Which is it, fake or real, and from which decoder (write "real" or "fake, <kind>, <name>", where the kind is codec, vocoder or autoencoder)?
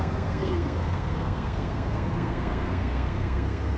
fake, codec, SNAC